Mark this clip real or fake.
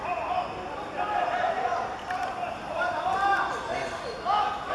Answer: real